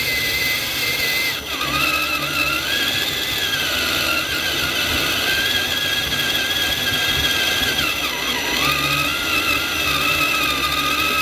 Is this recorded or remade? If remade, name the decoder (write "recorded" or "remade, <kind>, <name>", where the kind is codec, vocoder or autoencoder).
recorded